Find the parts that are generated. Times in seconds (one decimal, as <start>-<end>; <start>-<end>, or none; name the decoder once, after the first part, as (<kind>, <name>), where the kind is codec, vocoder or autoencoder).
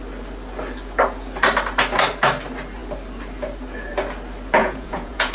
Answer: 4.6-5.3 (vocoder, Vocos)